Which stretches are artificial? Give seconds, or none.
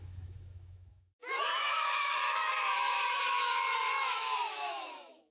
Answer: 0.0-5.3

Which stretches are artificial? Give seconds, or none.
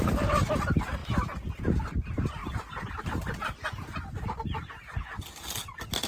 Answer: 0.0-1.0; 1.6-2.4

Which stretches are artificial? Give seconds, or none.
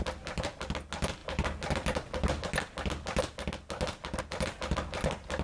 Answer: none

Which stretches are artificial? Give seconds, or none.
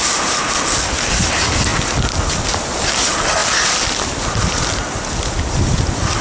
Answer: none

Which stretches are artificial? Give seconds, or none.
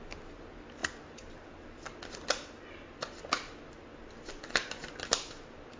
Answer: none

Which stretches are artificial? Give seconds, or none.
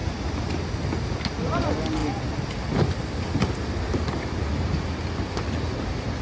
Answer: none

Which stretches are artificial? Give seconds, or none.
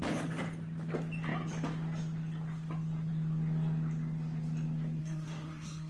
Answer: 5.0-5.9